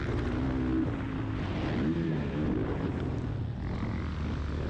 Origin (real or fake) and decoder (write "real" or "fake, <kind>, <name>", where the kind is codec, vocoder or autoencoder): real